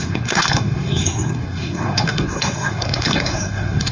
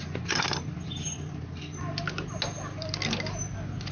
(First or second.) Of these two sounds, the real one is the second